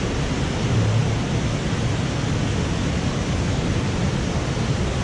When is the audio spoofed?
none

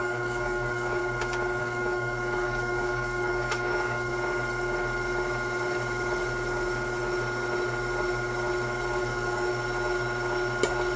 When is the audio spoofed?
0.0-1.0 (codec, DAC); 1.6-4.1; 9.0-9.5

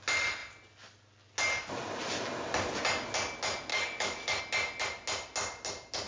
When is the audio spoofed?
3.7-4.4 (codec, DAC)

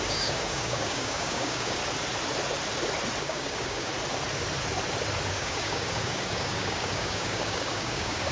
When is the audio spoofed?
0.0-1.8 (codec, DAC); 3.2-3.9; 5.3-8.3

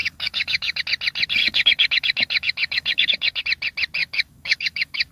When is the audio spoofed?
0.0-0.8 (codec, DAC); 1.4-3.4; 4.0-5.1

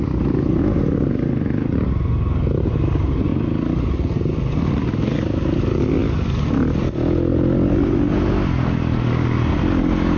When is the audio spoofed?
none

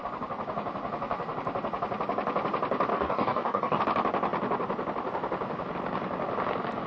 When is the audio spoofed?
2.9-3.8 (codec, DAC)

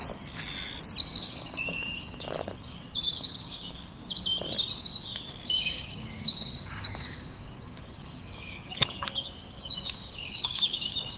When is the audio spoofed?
1.1-4.0 (codec, DAC); 4.8-11.2